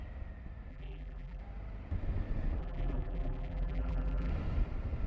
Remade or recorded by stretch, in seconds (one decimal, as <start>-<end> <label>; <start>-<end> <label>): 0.0-0.7 recorded; 0.7-1.4 remade; 1.4-2.6 recorded; 2.6-4.3 remade; 4.3-5.1 recorded